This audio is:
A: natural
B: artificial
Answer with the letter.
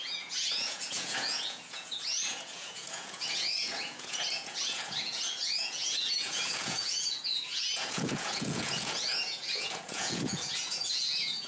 B